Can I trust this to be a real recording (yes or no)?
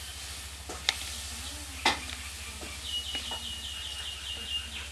yes